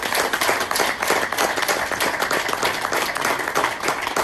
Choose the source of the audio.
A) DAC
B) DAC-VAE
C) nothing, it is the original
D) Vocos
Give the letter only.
C